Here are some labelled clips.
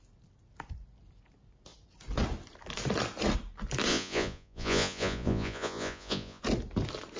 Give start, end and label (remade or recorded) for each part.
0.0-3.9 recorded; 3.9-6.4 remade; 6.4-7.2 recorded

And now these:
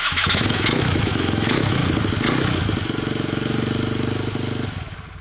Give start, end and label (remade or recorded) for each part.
0.0-1.8 remade; 1.8-5.2 recorded